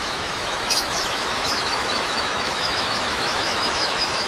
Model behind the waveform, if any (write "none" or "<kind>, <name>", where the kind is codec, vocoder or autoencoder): autoencoder, DAC-VAE